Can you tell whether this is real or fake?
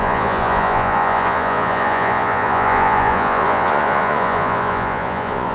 fake